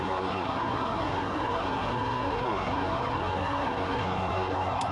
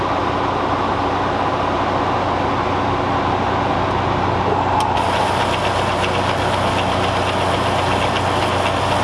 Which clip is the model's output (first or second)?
first